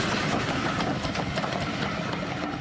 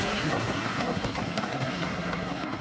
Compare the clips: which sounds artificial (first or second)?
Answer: second